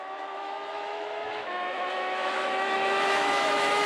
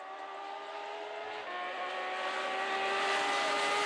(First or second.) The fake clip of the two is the first